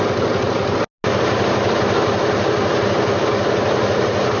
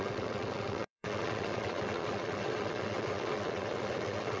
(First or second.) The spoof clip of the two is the second